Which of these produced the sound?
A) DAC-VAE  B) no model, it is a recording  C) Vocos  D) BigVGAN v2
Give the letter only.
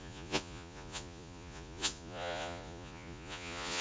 C